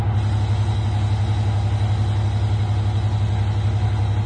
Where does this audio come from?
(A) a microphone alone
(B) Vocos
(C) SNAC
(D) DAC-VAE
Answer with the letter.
A